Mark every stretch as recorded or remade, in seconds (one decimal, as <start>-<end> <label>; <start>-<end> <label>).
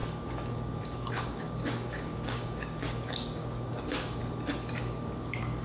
0.0-4.2 remade; 4.2-4.8 recorded; 4.8-5.6 remade